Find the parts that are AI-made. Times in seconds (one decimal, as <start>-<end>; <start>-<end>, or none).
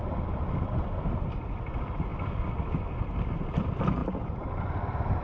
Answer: none